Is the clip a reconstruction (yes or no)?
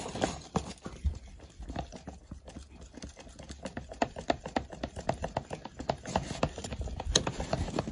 no